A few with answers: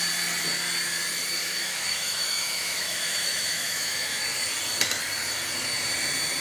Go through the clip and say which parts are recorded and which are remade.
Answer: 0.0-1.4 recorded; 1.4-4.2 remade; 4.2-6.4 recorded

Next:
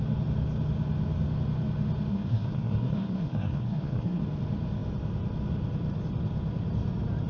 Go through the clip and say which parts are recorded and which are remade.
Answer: 0.0-2.1 recorded; 2.1-4.2 remade; 4.2-7.3 recorded